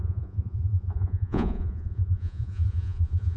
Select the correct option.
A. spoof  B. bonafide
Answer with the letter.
A